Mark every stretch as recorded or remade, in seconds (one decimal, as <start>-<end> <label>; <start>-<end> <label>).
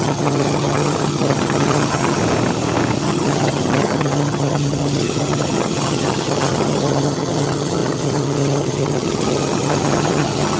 0.0-2.2 remade; 2.2-3.0 recorded; 3.0-10.6 remade